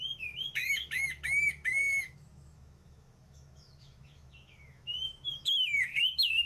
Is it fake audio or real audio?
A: fake